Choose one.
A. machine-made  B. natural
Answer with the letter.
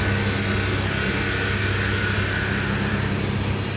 B